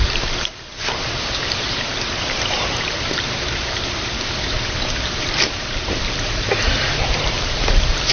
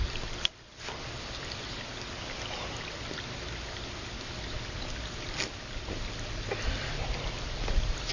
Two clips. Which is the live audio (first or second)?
second